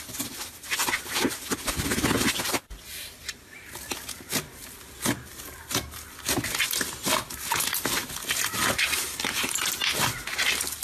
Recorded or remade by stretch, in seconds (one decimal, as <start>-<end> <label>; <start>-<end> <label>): 0.0-8.6 recorded; 8.6-9.7 remade; 9.7-10.8 recorded